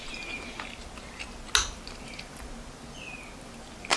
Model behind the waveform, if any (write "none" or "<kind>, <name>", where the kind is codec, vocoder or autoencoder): none